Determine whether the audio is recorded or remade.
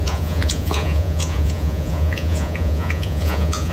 remade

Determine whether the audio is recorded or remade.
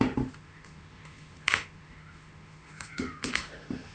remade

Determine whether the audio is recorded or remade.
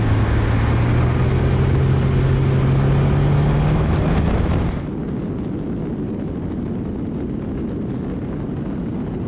recorded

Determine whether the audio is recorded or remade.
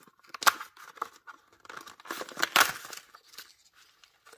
recorded